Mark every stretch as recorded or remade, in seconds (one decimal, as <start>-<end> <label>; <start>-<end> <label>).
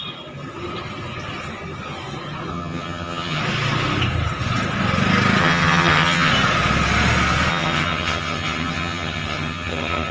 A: 0.0-2.5 recorded; 2.5-3.4 remade; 3.4-5.4 recorded; 5.4-6.3 remade; 6.3-7.5 recorded; 7.5-10.1 remade